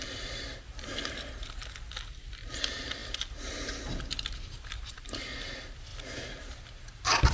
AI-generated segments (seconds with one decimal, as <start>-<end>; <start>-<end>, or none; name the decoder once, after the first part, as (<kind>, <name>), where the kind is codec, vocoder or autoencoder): 0.0-1.6 (vocoder, BigVGAN v2); 2.5-5.9; 6.6-7.3